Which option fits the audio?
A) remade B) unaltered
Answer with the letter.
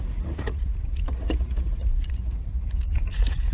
A